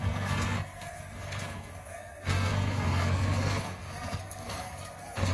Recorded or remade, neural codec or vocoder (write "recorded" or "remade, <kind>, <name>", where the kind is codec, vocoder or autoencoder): remade, codec, SNAC